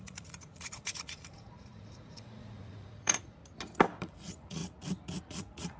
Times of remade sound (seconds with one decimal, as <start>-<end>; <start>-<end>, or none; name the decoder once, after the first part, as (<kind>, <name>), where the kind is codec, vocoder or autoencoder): 0.0-3.4 (vocoder, Vocos); 4.0-4.6; 5.2-5.8